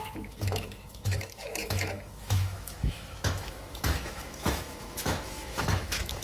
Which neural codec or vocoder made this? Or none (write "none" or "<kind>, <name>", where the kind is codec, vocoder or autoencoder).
autoencoder, DAC-VAE